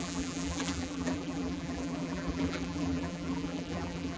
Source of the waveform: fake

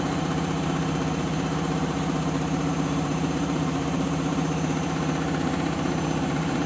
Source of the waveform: fake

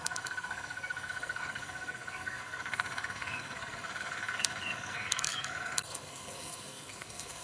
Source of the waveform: fake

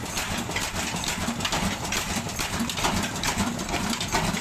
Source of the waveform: real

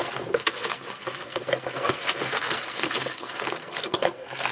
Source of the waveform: fake